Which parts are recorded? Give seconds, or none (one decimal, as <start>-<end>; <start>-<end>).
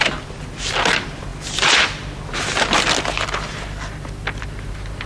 0.0-5.1